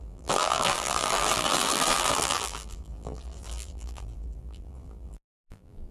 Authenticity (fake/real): fake